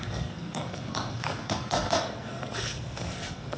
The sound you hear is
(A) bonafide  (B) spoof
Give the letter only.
B